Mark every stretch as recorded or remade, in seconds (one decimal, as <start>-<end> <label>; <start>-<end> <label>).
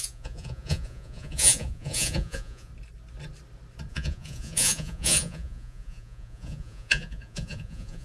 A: 0.0-2.7 remade; 2.7-3.9 recorded; 3.9-8.0 remade